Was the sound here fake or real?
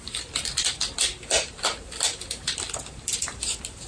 fake